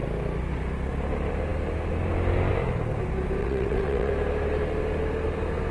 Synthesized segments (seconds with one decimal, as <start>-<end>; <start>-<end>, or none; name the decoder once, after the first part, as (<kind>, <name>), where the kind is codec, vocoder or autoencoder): 3.4-4.1 (vocoder, WaveNeXt)